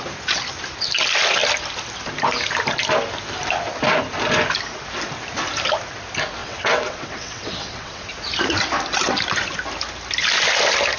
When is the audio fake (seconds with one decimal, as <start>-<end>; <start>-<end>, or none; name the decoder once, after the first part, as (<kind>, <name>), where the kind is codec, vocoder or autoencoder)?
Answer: 6.4-8.1 (vocoder, WaveNeXt)

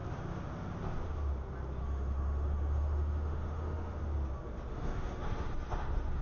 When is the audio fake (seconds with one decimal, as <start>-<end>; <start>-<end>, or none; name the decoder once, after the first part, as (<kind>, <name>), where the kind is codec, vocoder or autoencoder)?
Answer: 1.8-4.0 (autoencoder, DAC-VAE); 4.7-6.2

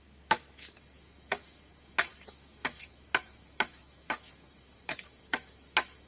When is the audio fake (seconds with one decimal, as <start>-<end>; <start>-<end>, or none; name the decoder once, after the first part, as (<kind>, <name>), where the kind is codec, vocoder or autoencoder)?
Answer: 0.0-6.1 (autoencoder, DAC-VAE)

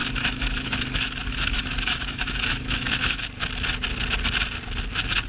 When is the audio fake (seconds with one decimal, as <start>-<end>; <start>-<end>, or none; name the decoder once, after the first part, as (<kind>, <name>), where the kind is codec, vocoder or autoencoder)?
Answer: 0.0-3.2 (autoencoder, DAC-VAE)

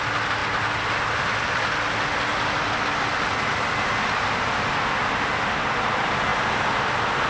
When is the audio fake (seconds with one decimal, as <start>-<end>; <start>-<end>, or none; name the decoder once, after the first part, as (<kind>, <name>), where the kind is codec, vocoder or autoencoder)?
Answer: none

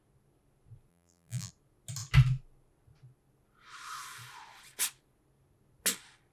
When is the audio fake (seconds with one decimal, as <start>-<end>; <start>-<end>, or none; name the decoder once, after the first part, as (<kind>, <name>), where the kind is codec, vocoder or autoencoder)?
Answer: 0.9-1.5 (vocoder, BigVGAN v2)